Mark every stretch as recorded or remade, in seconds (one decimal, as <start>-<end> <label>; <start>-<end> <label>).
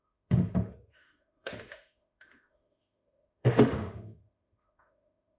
0.0-5.4 remade